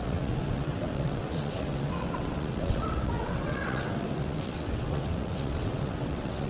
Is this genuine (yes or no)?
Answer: no